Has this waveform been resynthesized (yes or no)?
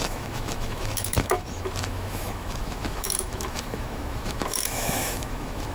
yes